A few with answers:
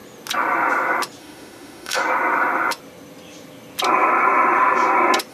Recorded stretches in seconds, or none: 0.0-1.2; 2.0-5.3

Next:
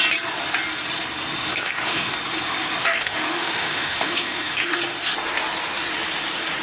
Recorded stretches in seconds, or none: 0.0-1.4; 2.2-2.8; 4.8-6.6

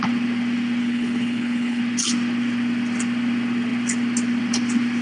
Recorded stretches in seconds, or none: 0.0-0.8; 1.8-5.0

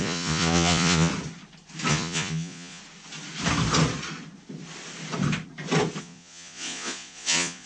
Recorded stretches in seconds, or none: 1.1-1.9; 2.8-6.0